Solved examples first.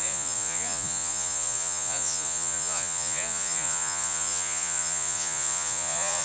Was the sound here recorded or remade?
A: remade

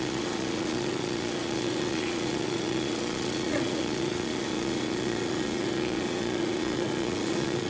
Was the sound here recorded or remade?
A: remade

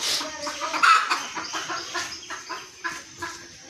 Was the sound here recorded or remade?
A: recorded